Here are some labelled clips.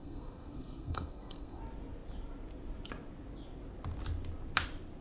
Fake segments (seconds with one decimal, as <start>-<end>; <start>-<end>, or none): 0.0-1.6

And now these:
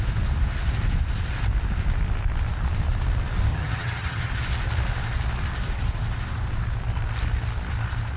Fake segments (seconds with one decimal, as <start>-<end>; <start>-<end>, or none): 3.5-4.3

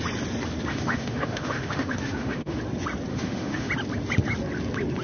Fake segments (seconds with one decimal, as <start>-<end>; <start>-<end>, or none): 0.7-2.6; 3.1-3.7